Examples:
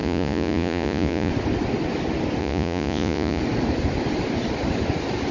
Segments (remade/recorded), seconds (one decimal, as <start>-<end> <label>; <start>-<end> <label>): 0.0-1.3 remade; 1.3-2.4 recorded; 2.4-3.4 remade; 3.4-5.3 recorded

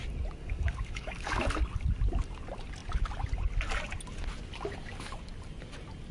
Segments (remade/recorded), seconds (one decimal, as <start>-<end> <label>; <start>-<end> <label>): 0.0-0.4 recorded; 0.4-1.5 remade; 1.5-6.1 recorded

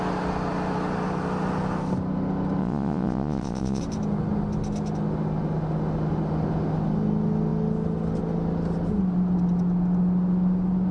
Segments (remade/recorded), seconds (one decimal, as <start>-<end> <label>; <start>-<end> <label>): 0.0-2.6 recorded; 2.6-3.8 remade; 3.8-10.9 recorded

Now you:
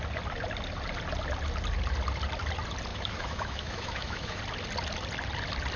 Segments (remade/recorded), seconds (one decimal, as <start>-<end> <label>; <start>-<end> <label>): 0.0-2.9 recorded; 2.9-4.4 remade; 4.4-5.8 recorded

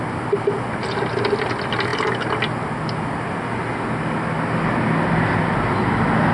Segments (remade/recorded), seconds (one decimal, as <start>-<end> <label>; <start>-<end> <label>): 0.0-6.3 recorded